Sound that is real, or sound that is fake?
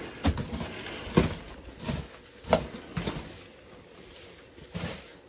real